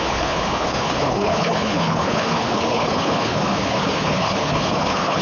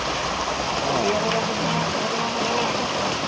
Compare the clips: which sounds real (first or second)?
second